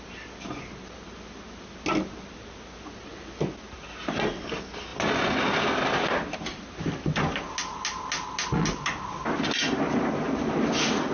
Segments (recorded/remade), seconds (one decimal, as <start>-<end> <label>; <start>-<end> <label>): 0.0-11.1 recorded